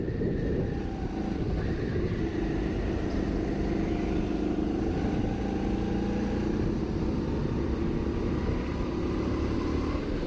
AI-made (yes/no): no